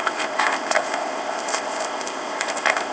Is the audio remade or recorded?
remade